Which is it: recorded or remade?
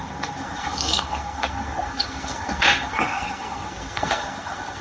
remade